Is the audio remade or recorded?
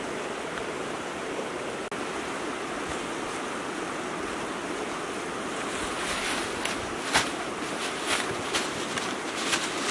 recorded